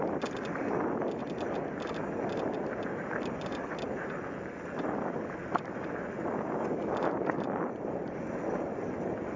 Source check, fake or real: real